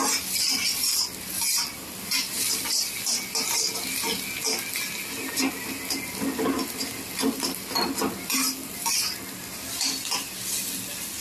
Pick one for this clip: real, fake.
real